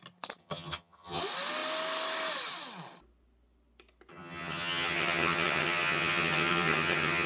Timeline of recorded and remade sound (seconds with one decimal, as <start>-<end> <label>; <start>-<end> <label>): 0.0-0.4 recorded; 0.4-1.2 remade; 1.2-4.1 recorded; 4.1-7.3 remade